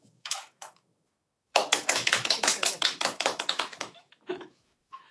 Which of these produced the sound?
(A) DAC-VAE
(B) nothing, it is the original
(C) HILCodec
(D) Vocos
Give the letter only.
A